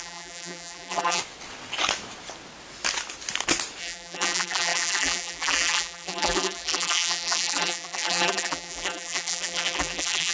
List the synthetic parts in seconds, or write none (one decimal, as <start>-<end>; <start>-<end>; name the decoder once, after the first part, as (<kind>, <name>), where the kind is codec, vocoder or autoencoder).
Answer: 0.0-1.2 (vocoder, BigVGAN v2); 3.8-10.3